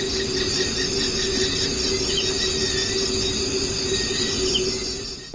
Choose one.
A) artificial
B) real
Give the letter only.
B